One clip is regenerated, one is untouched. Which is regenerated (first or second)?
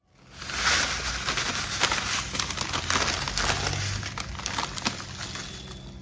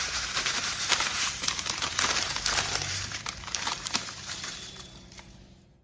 second